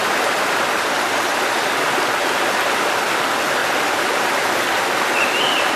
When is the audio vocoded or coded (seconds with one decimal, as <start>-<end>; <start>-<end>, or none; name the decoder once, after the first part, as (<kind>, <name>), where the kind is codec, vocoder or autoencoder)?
1.3-2.0 (vocoder, BigVGAN v2); 3.6-5.8